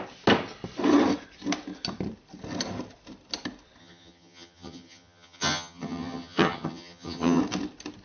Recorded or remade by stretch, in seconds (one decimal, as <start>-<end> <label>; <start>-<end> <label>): 0.0-3.8 recorded; 3.8-7.4 remade; 7.4-8.0 recorded